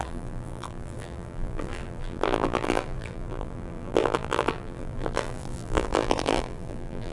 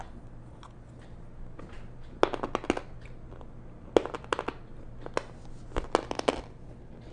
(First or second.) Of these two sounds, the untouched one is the second